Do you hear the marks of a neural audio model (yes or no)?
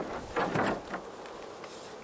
no